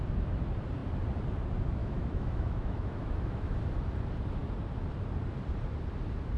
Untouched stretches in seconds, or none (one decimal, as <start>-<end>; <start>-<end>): 0.0-1.8; 3.6-6.4